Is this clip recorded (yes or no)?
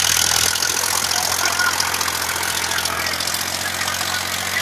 yes